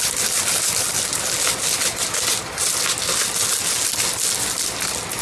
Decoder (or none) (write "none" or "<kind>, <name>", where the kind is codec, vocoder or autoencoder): none